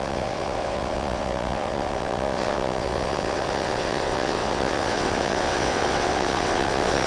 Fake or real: fake